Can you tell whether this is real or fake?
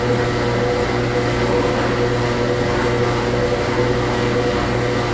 real